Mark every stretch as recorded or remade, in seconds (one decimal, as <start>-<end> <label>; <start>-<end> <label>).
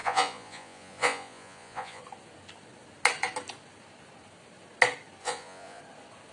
0.0-2.0 remade; 2.0-5.2 recorded; 5.2-5.8 remade; 5.8-6.3 recorded